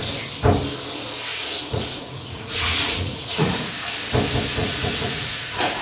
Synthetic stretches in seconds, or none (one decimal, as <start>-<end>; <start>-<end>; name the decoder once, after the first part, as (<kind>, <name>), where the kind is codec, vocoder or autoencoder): 1.3-3.7 (vocoder, Vocos); 4.6-5.8